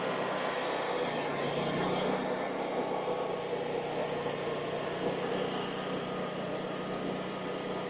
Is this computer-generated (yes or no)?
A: no